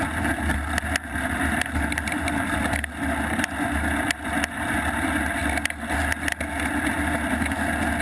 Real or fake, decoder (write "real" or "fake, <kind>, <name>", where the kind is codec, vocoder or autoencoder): real